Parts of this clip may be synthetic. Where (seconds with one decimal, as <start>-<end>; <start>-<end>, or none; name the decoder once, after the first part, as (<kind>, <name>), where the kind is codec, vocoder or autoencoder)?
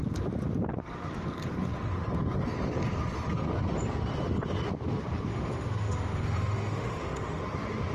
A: 5.3-7.4 (autoencoder, DAC-VAE)